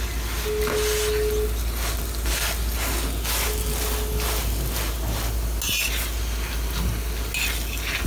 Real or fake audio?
real